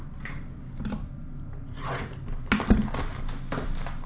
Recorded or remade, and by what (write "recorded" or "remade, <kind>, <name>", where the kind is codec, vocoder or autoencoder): recorded